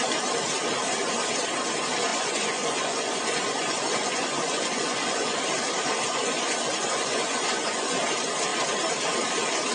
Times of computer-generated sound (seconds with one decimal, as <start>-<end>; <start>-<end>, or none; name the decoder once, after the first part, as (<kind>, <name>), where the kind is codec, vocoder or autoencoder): 2.1-5.4 (vocoder, Vocos); 6.1-8.0